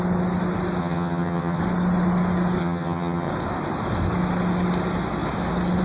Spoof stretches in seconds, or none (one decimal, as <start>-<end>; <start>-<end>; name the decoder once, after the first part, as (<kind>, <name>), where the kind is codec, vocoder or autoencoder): 0.8-1.6 (vocoder, HiFi-GAN); 2.6-3.3